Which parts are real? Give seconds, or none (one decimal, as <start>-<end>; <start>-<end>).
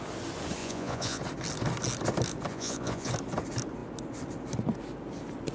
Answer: 0.0-0.6; 1.2-2.5; 3.1-5.5